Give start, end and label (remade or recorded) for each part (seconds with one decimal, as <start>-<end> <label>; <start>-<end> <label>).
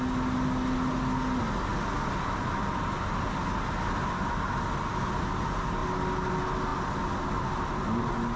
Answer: 0.0-8.4 recorded